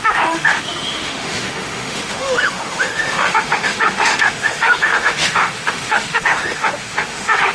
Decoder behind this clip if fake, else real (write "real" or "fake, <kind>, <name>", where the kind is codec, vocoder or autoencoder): fake, autoencoder, DAC-VAE